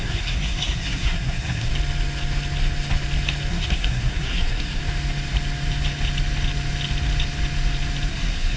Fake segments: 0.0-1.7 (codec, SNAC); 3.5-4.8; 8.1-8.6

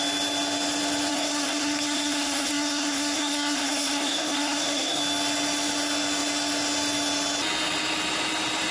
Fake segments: 1.1-5.0 (codec, SNAC)